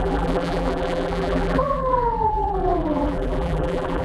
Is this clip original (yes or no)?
no